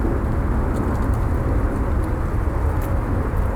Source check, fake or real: real